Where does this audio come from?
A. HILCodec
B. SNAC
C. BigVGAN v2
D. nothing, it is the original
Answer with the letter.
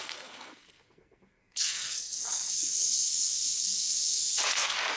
B